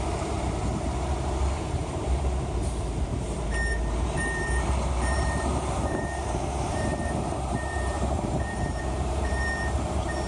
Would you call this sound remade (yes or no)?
yes